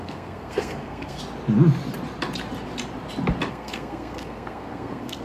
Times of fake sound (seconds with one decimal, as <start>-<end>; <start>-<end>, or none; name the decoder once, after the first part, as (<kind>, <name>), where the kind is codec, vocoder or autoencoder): 0.0-1.2 (codec, SNAC); 3.5-5.2